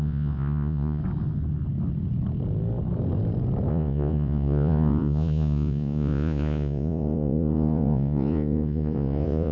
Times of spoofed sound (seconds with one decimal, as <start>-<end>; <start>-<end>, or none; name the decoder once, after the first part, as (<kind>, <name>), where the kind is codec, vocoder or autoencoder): 0.0-1.0 (vocoder, Vocos); 3.7-9.5